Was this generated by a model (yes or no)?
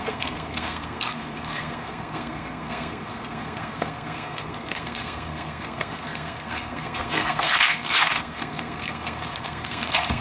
yes